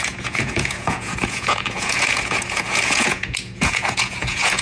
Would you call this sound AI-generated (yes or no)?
yes